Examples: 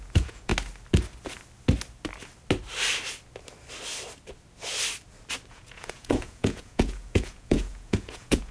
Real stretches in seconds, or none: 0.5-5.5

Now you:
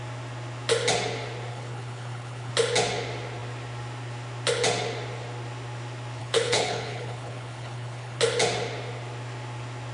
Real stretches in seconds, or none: 0.0-1.5; 2.5-6.2; 8.2-9.9